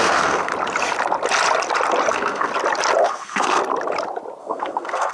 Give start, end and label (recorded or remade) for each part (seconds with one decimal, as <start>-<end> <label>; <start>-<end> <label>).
0.0-0.5 remade; 0.5-2.1 recorded; 2.1-2.5 remade; 2.5-3.0 recorded; 3.0-3.6 remade; 3.6-4.4 recorded; 4.4-5.1 remade